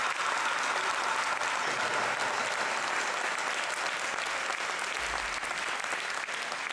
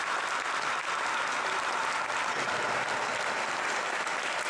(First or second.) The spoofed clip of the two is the second